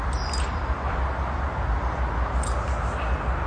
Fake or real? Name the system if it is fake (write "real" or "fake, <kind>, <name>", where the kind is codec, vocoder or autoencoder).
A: real